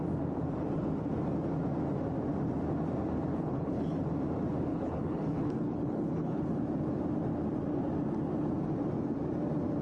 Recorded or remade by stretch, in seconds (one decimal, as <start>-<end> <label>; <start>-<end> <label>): 0.0-3.3 recorded; 3.3-3.8 remade; 3.8-4.7 recorded; 4.7-6.6 remade; 6.6-9.8 recorded